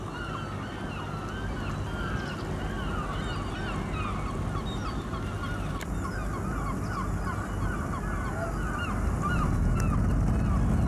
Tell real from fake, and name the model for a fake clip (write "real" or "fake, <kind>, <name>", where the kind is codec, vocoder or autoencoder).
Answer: real